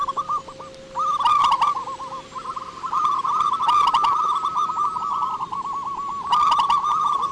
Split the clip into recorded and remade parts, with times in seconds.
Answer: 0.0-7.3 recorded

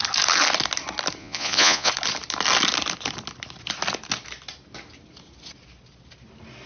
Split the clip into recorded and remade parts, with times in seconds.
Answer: 0.0-1.2 recorded; 1.2-1.9 remade; 1.9-6.7 recorded

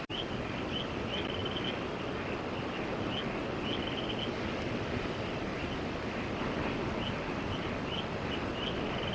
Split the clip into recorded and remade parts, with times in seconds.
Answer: 0.0-9.1 recorded

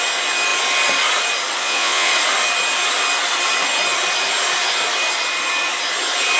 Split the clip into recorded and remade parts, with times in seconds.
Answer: 0.0-1.6 recorded; 1.6-2.1 remade; 2.1-6.4 recorded

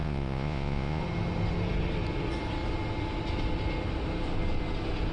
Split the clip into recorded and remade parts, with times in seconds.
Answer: 0.0-1.0 remade; 1.0-5.1 recorded

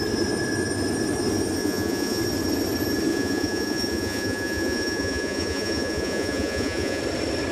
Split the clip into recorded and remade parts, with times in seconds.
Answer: 0.0-1.6 recorded; 1.6-2.2 remade; 2.2-3.1 recorded; 3.1-7.0 remade; 7.0-7.5 recorded